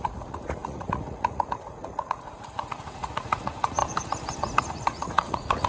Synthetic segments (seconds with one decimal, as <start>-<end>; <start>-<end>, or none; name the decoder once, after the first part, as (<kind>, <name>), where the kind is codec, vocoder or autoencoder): 0.0-3.8 (vocoder, Vocos); 4.6-5.7